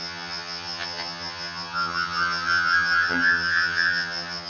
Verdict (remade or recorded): remade